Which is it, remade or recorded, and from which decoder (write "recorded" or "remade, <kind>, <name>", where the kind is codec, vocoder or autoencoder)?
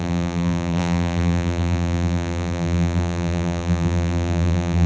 remade, vocoder, BigVGAN v2